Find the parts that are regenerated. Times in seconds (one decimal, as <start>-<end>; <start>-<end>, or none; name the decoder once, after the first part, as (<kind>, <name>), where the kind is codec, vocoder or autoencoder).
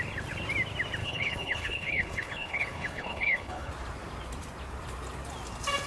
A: 1.0-3.7 (codec, HILCodec)